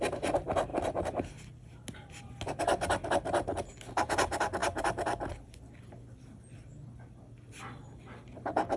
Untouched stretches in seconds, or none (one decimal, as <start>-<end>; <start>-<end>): 0.0-8.8